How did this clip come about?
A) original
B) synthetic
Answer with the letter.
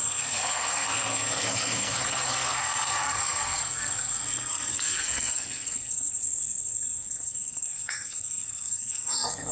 B